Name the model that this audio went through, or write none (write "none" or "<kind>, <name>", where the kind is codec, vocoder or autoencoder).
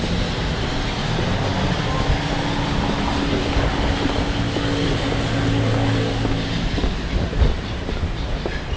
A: none